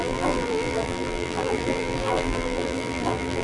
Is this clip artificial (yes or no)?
yes